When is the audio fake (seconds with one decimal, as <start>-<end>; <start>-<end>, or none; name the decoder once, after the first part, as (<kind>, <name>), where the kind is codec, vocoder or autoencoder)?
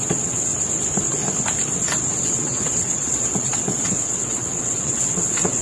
0.0-0.5 (vocoder, WaveNeXt); 2.2-5.6